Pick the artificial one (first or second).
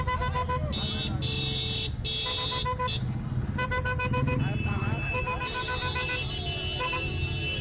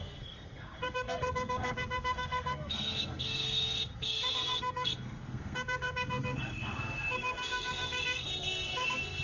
second